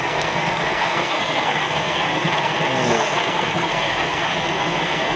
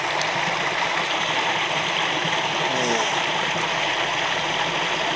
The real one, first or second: second